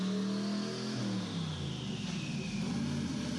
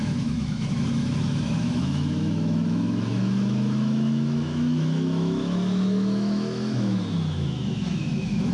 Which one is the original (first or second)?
first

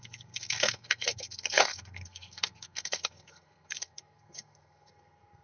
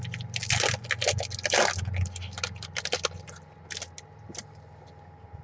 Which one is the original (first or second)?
second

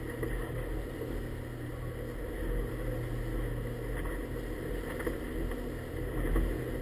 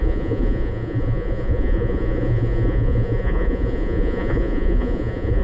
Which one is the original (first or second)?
first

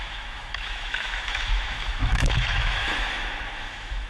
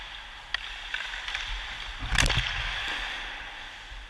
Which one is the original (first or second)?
second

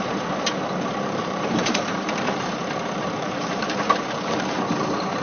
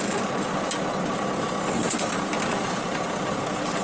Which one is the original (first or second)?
second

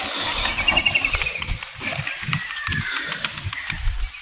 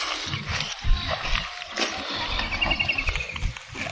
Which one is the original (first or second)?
second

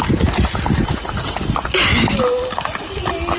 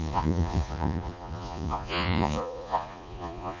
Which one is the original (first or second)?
first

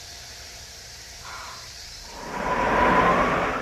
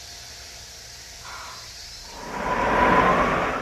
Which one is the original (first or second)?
second